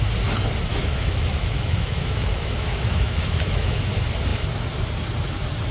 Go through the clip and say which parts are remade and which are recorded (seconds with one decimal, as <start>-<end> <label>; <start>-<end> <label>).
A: 0.0-0.7 recorded; 0.7-3.8 remade; 3.8-5.7 recorded